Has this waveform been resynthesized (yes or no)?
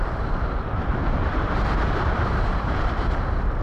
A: yes